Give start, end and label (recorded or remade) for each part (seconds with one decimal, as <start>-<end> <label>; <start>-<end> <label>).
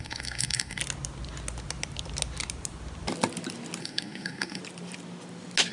0.0-0.8 remade; 0.8-3.8 recorded; 3.8-4.6 remade; 4.6-5.7 recorded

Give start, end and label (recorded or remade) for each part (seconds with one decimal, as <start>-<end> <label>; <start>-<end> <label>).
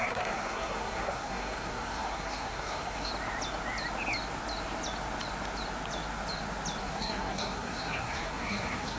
0.0-3.1 remade; 3.1-6.8 recorded; 6.8-9.0 remade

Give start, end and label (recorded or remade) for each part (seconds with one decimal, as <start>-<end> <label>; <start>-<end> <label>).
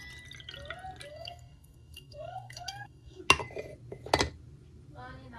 0.0-1.1 recorded; 1.1-3.2 remade; 3.2-5.4 recorded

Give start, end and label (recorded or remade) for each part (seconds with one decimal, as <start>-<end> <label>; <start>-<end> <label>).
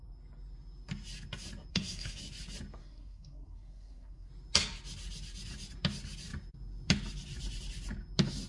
0.0-1.7 recorded; 1.7-2.2 remade; 2.2-2.8 recorded; 2.8-4.3 remade; 4.3-8.5 recorded